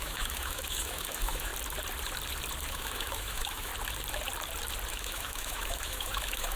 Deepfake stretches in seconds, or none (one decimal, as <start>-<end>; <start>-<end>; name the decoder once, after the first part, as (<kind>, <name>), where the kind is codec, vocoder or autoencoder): 0.0-1.5 (autoencoder, DAC-VAE); 2.7-3.7; 4.9-6.6